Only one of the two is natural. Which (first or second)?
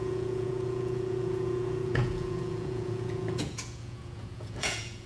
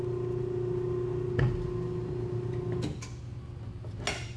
second